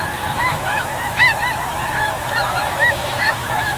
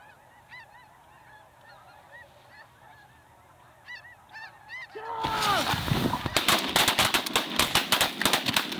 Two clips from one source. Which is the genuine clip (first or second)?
second